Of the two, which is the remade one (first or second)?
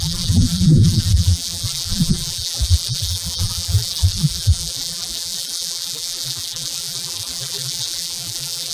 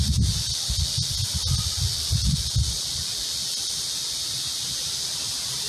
first